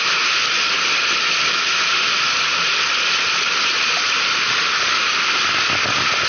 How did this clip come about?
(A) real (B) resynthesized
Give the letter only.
A